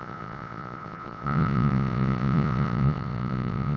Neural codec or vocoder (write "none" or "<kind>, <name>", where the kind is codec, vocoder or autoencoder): vocoder, Vocos